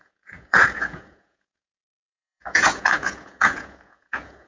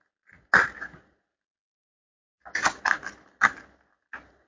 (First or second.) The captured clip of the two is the second